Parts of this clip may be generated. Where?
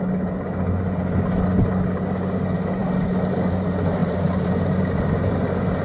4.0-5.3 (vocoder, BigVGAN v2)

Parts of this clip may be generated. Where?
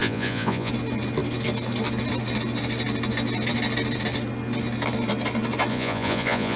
0.0-0.7 (vocoder, Vocos); 5.7-6.6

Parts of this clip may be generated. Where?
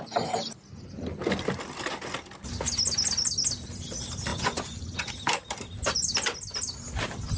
4.3-5.1 (vocoder, Vocos)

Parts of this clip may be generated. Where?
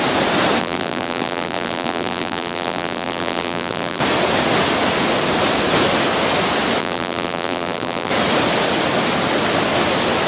0.6-4.0 (vocoder, BigVGAN v2); 6.8-8.1